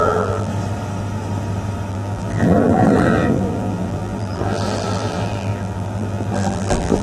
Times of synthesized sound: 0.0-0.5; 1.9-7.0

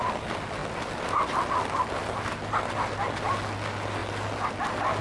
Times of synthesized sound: none

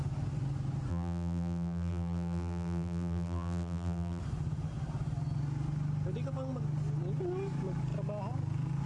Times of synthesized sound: 0.9-4.2

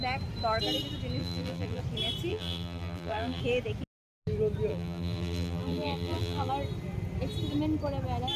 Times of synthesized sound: 1.2-1.8; 2.3-3.4; 4.7-6.5

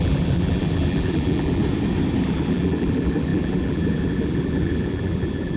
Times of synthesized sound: 0.0-1.6; 2.2-5.6